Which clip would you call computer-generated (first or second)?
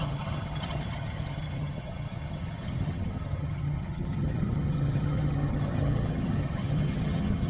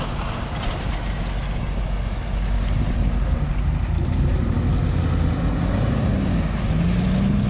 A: first